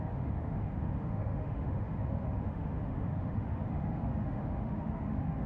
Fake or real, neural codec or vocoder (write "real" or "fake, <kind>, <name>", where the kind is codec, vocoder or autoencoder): fake, autoencoder, DAC-VAE